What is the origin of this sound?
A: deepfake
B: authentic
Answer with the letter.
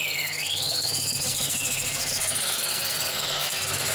A